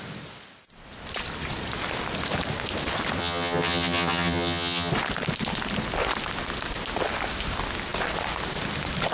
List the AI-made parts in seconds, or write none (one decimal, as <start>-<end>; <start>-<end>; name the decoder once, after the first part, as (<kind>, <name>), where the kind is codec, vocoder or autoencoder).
3.2-4.9 (vocoder, HiFi-GAN)